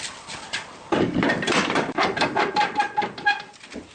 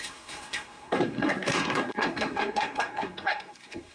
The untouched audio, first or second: first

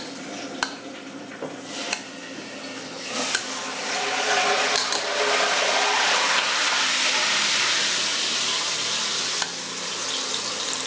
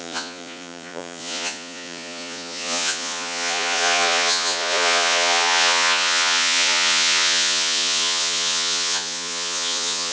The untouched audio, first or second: first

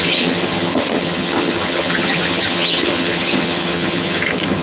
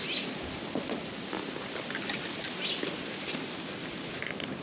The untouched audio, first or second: second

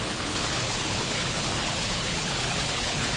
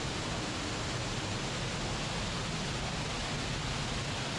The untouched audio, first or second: second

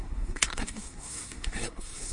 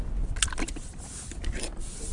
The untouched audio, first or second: second